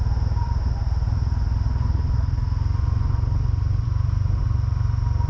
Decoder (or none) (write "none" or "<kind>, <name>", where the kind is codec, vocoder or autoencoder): none